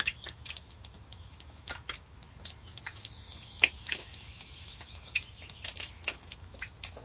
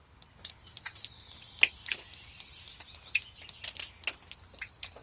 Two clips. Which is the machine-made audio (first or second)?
first